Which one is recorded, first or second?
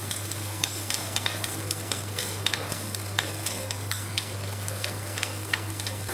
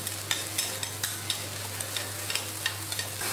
second